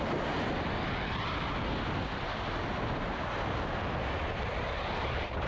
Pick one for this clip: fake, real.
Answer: real